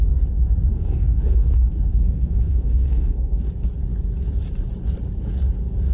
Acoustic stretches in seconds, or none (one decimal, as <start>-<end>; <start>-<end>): 0.0-0.7; 3.5-5.9